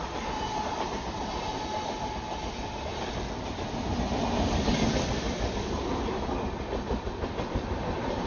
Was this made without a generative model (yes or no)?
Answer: yes